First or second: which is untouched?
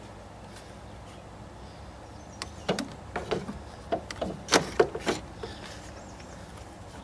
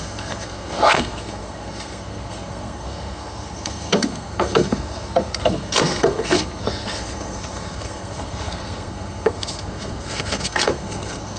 first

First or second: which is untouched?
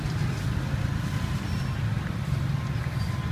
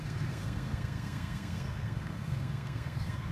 first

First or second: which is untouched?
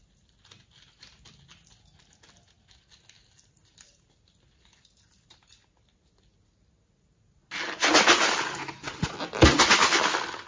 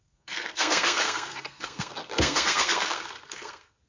first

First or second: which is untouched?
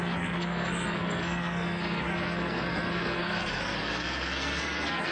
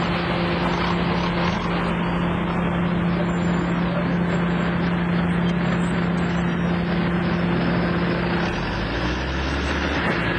second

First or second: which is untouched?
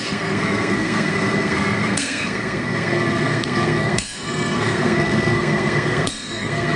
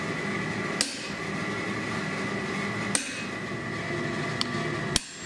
second